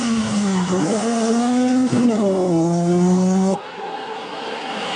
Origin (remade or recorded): remade